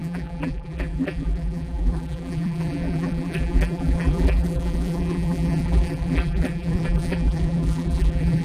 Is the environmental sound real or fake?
fake